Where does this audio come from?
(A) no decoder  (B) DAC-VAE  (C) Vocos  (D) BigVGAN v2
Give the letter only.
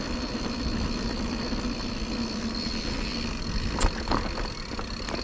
A